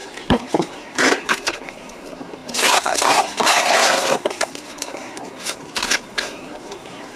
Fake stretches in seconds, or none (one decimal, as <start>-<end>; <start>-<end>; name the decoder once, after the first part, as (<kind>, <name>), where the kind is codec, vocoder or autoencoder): 0.0-7.2 (codec, SNAC)